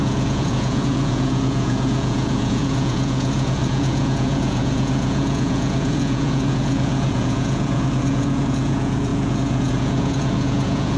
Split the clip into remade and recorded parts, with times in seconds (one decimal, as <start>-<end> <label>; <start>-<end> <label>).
0.0-11.0 remade